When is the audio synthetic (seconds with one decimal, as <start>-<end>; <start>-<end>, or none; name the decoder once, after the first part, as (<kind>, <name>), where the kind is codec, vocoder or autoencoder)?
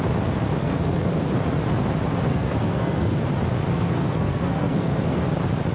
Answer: 0.6-1.1 (codec, SNAC); 2.3-3.1; 3.7-5.2